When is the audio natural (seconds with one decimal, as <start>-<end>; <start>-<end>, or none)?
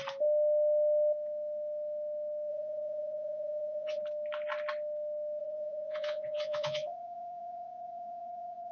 0.0-2.5; 4.0-5.4